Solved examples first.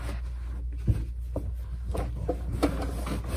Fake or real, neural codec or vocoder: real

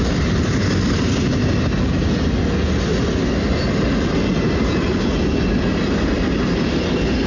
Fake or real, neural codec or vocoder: real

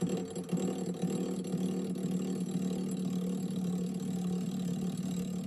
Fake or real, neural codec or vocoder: real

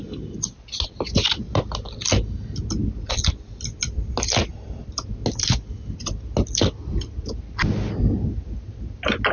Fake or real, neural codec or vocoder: real